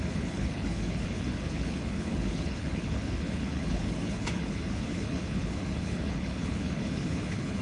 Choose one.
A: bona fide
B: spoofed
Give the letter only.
B